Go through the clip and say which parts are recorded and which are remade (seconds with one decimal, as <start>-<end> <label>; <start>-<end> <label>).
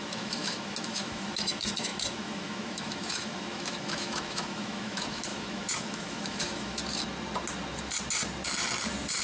0.0-6.8 remade; 6.8-9.2 recorded